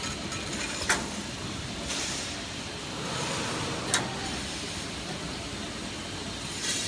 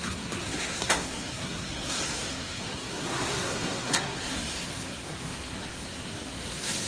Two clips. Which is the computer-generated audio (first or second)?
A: second